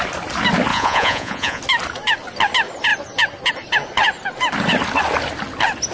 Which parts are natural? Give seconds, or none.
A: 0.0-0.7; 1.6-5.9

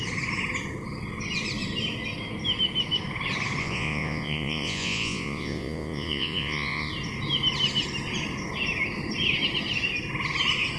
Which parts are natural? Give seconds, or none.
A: 0.0-3.6; 6.9-10.8

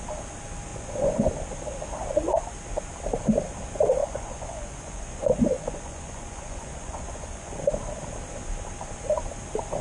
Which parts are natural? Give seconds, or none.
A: 0.0-0.7; 1.3-4.0; 7.6-9.8

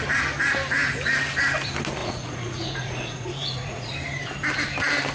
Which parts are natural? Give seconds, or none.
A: 0.0-2.0; 3.9-5.1

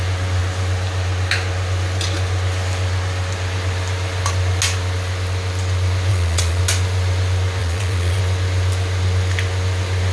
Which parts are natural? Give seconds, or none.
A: 0.0-6.1; 6.6-7.6; 8.2-10.1

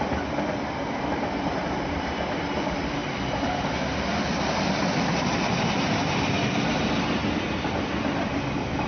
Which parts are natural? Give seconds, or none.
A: 0.0-8.9